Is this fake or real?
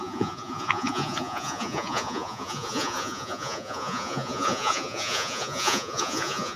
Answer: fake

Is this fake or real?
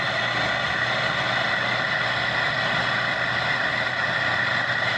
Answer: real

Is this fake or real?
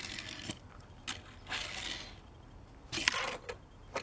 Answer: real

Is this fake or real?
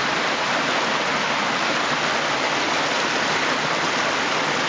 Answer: real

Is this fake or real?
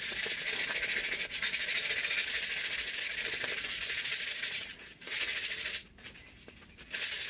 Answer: real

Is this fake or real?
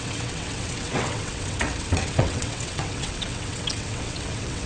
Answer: fake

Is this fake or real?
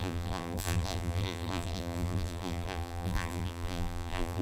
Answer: fake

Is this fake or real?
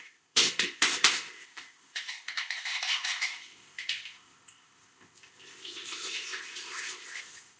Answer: fake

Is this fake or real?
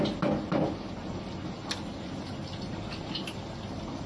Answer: real